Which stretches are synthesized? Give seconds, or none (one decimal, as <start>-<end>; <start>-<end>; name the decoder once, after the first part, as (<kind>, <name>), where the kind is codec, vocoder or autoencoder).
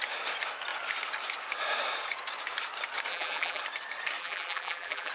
3.1-3.6 (vocoder, BigVGAN v2); 4.2-5.1